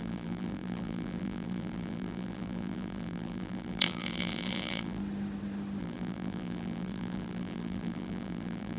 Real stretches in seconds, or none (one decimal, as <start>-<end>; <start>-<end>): 5.0-5.8